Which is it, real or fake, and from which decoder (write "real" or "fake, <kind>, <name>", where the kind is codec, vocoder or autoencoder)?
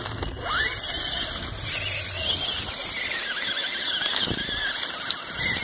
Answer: real